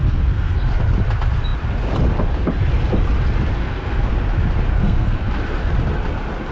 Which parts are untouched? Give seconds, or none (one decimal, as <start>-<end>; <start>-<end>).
0.7-3.6; 4.1-4.7; 5.3-6.5